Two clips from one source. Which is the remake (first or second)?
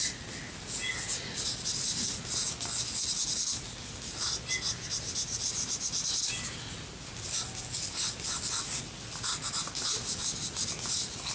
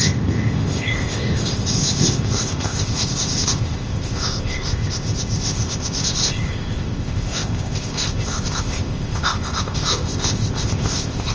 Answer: second